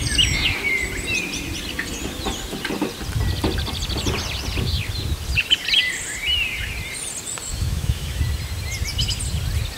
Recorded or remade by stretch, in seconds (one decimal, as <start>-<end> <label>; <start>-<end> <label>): 0.0-7.5 recorded; 7.5-8.2 remade; 8.2-9.8 recorded